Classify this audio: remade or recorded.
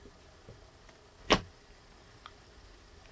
recorded